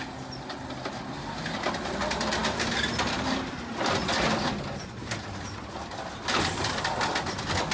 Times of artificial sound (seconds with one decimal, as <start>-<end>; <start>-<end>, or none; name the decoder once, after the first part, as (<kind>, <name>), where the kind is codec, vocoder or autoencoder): none